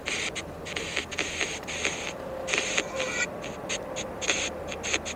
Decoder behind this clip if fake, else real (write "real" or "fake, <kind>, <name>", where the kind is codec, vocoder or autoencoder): real